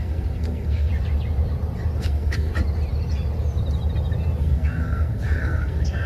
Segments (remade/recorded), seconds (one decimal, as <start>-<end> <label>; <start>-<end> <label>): 0.0-0.9 remade; 0.9-2.0 recorded; 2.0-2.5 remade; 2.5-4.4 recorded; 4.4-6.1 remade

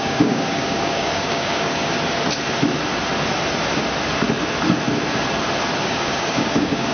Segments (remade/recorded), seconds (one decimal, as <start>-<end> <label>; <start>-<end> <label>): 0.0-1.8 remade; 1.8-5.8 recorded; 5.8-6.9 remade

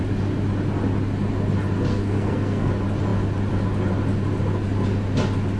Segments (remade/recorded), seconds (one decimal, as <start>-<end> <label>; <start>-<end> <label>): 0.0-1.9 recorded; 1.9-2.7 remade; 2.7-5.6 recorded

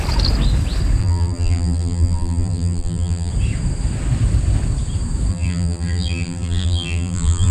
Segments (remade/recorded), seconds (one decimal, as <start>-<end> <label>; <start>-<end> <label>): 0.0-1.0 recorded; 1.0-3.3 remade; 3.3-5.3 recorded; 5.3-7.5 remade

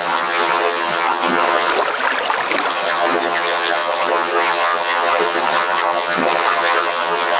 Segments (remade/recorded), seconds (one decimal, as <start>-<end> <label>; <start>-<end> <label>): 0.0-1.7 remade; 1.7-2.7 recorded; 2.7-7.4 remade